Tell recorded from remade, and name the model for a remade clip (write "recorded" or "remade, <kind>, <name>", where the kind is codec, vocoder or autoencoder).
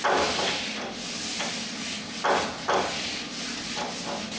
recorded